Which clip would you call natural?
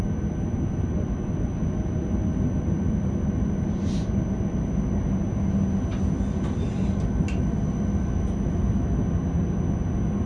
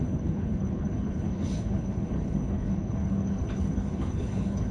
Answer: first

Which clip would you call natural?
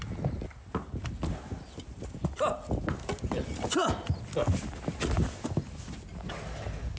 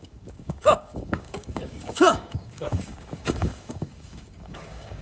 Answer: first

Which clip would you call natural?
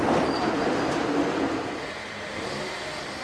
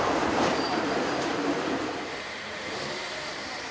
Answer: first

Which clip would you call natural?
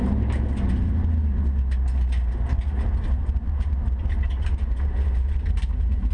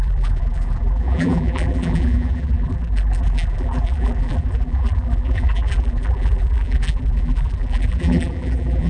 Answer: first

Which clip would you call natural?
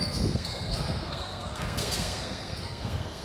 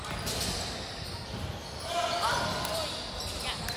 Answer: second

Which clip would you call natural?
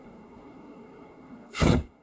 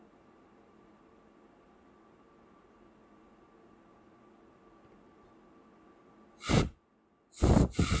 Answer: second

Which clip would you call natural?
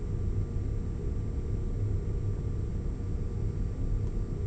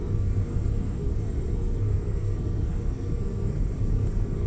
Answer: first